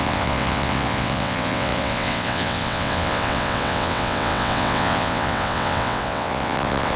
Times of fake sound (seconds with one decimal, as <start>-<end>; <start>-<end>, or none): 0.0-7.0